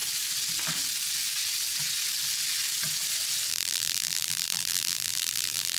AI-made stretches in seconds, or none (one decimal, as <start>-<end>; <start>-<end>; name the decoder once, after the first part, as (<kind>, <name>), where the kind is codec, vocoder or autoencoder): 3.5-5.8 (vocoder, BigVGAN v2)